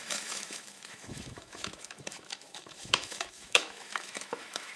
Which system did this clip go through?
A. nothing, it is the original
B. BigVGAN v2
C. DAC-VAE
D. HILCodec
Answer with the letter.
C